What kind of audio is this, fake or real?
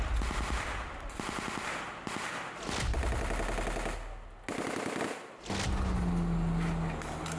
real